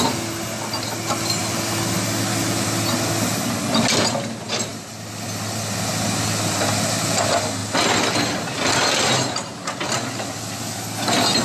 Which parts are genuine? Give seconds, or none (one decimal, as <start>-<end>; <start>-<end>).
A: 0.0-11.4